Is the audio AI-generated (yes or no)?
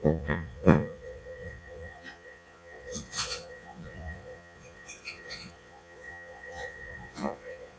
yes